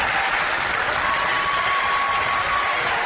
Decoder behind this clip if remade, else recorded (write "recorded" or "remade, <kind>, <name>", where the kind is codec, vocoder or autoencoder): recorded